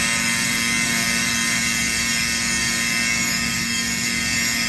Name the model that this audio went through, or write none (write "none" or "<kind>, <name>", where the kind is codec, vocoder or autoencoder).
codec, DAC